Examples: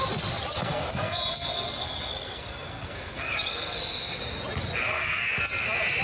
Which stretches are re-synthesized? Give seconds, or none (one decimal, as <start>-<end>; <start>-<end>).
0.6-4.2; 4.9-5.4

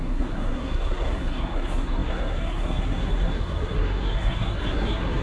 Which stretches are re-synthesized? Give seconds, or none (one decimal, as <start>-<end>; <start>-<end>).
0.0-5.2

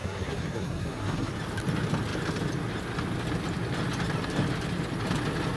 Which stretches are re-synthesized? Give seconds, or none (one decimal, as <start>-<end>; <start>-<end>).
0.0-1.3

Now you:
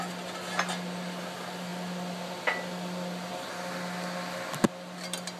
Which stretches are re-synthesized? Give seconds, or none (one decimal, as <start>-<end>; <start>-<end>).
none

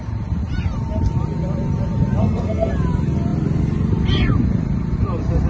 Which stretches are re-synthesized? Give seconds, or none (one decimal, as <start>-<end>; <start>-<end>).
2.2-2.7

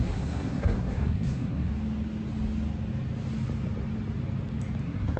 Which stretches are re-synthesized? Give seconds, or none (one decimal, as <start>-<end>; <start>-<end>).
0.0-1.7; 4.8-5.2

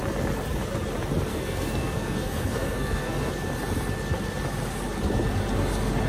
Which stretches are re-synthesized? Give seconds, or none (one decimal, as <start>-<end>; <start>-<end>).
1.3-3.3

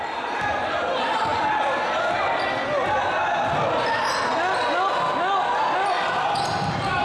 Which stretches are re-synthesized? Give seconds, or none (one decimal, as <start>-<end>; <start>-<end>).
none